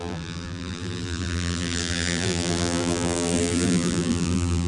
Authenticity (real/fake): fake